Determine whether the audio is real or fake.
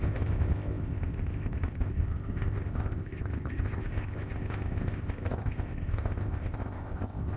fake